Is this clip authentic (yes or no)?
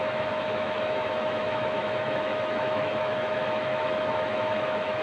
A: no